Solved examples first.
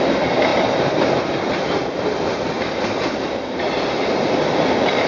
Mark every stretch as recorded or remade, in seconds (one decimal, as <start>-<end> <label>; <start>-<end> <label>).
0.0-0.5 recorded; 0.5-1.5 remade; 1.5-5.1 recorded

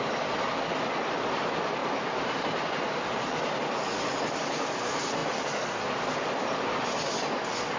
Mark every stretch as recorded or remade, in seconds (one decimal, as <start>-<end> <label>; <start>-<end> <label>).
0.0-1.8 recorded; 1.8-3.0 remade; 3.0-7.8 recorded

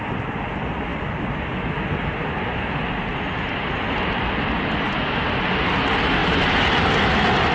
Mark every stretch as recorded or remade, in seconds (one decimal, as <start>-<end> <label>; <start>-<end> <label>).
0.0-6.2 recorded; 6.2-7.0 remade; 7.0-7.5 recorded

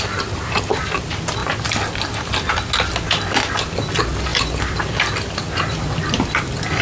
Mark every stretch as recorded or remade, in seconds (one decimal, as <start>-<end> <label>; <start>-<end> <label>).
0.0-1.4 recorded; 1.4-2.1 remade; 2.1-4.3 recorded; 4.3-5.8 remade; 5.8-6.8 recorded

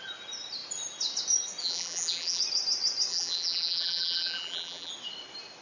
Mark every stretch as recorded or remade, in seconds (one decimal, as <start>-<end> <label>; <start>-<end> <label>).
0.0-1.6 recorded; 1.6-2.4 remade; 2.4-3.1 recorded; 3.1-4.9 remade; 4.9-5.6 recorded

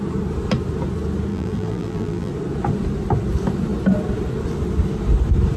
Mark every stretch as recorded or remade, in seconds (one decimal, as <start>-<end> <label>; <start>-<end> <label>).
0.0-1.3 recorded; 1.3-2.3 remade; 2.3-5.6 recorded

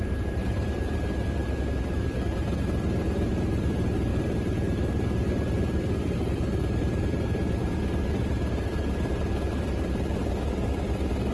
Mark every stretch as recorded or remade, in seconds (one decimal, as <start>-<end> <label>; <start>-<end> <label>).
0.0-11.3 remade